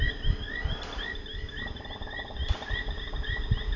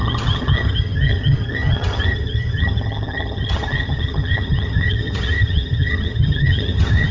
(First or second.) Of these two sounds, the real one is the first